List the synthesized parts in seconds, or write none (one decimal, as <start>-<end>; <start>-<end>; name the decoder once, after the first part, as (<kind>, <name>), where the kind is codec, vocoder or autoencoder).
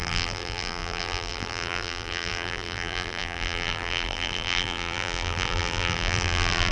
0.0-6.7 (vocoder, BigVGAN v2)